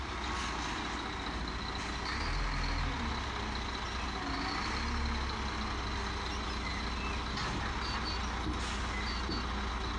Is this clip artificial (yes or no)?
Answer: no